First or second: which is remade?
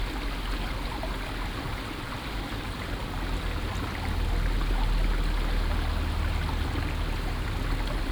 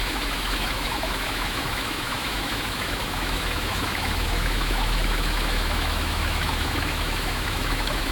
second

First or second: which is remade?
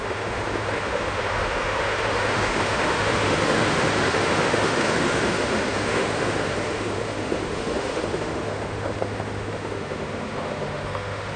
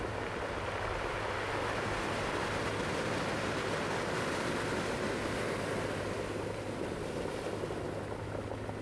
first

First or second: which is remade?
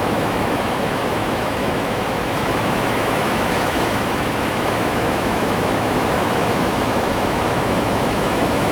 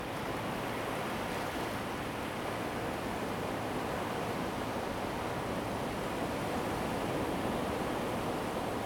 first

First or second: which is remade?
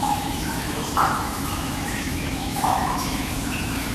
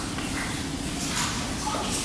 first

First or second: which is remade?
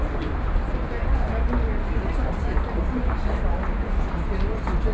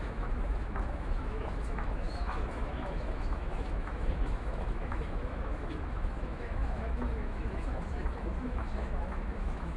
second